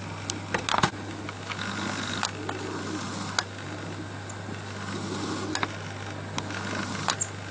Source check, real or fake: real